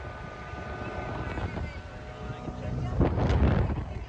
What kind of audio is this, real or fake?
real